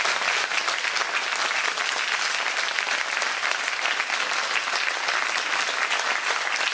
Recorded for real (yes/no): yes